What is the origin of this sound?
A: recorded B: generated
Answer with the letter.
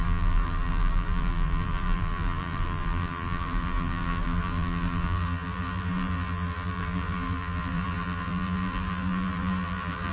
B